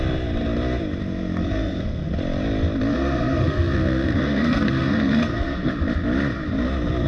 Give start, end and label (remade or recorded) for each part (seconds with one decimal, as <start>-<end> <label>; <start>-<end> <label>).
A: 0.0-1.4 recorded; 1.4-2.1 remade; 2.1-2.9 recorded; 2.9-5.7 remade; 5.7-7.1 recorded